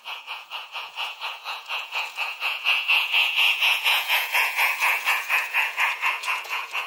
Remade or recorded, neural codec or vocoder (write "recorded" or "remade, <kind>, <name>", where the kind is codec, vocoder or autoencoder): remade, vocoder, Vocos